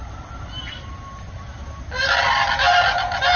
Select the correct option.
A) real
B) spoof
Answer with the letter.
A